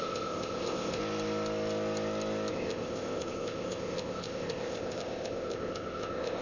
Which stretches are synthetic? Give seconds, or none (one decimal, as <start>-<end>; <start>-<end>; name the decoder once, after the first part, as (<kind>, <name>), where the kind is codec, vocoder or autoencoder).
0.0-1.0 (codec, ZipCodec); 2.5-6.4